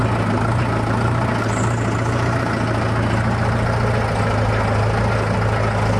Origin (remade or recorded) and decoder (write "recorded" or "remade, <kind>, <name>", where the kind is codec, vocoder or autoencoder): recorded